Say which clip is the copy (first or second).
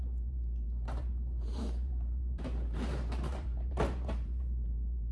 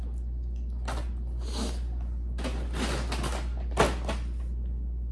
first